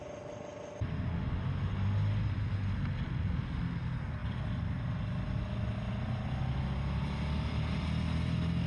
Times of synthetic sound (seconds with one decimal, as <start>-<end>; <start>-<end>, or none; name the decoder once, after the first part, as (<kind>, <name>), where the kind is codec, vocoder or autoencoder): none